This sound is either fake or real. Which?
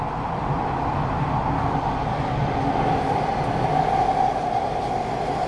real